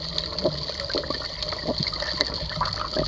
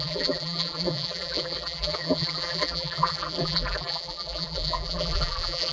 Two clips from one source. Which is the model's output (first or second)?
second